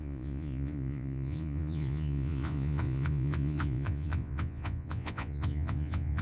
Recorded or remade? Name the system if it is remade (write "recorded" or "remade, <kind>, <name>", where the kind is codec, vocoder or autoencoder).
remade, vocoder, Vocos